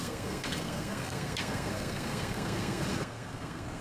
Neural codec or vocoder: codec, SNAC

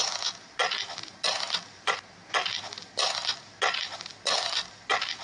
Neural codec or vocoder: none